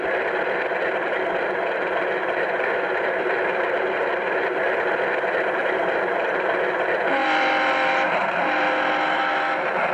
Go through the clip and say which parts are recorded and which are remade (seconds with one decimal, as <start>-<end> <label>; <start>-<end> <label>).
0.0-2.2 recorded; 2.2-3.1 remade; 3.1-5.6 recorded; 5.6-6.5 remade; 6.5-7.2 recorded; 7.2-9.2 remade; 9.2-9.9 recorded

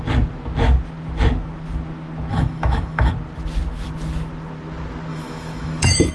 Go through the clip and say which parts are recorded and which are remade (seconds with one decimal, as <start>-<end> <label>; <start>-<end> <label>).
0.0-2.3 recorded; 2.3-3.1 remade; 3.1-5.1 recorded; 5.1-6.1 remade